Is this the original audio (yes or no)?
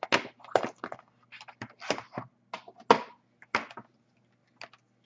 yes